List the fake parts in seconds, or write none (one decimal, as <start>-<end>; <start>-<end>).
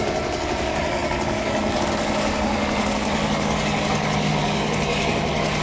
0.0-5.6